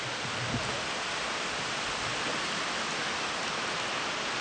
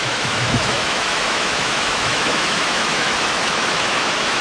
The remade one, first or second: second